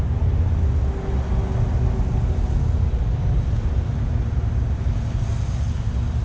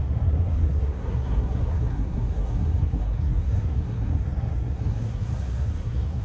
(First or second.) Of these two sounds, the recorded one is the first